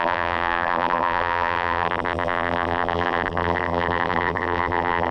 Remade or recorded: remade